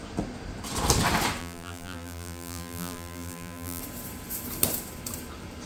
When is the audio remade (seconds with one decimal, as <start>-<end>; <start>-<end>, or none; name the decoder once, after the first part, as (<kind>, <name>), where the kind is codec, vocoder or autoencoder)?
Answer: 1.4-3.8 (vocoder, BigVGAN v2)